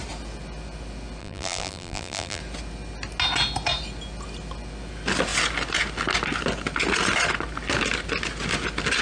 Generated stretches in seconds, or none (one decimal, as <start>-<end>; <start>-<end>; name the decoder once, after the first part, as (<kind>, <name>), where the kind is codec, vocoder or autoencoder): 1.2-2.4 (vocoder, BigVGAN v2)